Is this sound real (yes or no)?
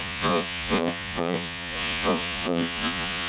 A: no